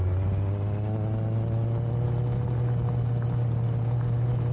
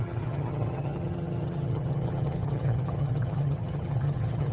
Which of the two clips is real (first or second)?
first